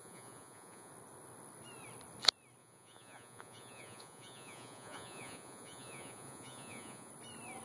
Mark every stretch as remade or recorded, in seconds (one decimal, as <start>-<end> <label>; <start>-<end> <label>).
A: 0.0-0.9 remade; 0.9-2.6 recorded; 2.6-7.1 remade; 7.1-7.6 recorded